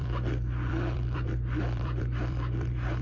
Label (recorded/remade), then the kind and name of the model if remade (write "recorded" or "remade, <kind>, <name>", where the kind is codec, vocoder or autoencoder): remade, vocoder, BigVGAN v2